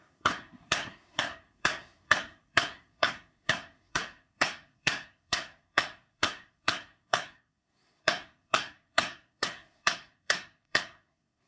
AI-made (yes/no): yes